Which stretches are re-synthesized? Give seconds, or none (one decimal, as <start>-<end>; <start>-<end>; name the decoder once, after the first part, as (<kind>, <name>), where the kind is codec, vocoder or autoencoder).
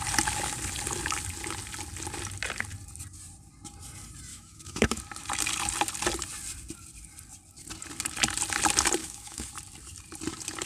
4.3-5.0 (autoencoder, DAC-VAE); 9.0-9.5